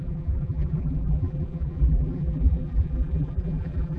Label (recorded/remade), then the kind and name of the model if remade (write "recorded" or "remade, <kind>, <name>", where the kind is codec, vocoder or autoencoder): remade, vocoder, BigVGAN v2